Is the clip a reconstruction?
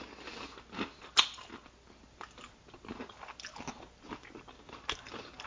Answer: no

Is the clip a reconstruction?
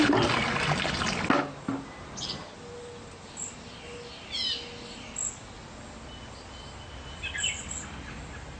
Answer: no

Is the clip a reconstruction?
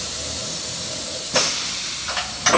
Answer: no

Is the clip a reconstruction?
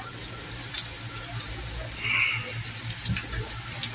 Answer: no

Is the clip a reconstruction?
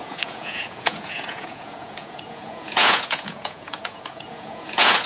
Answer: yes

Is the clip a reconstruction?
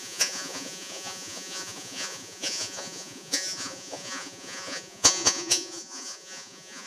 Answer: yes